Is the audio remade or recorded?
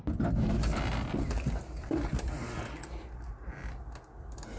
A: recorded